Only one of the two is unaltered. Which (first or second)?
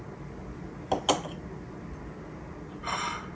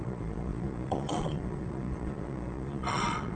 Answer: first